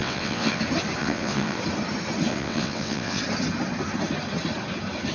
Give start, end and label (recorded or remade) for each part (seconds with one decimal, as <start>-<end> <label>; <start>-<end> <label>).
0.0-0.6 remade; 0.6-1.0 recorded; 1.0-1.6 remade; 1.6-2.3 recorded; 2.3-3.2 remade; 3.2-5.1 recorded